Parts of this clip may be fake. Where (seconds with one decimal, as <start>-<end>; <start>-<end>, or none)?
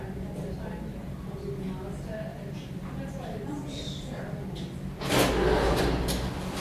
2.3-4.2